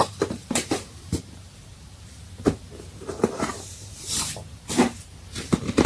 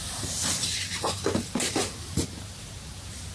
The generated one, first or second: first